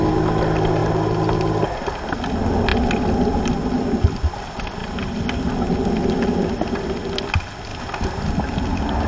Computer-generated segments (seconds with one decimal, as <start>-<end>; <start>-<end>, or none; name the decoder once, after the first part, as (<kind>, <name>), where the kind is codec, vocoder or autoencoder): none